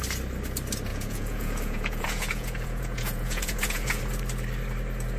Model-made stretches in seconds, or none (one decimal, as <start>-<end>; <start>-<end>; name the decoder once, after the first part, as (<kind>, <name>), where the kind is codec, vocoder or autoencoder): 0.9-4.0 (vocoder, Vocos)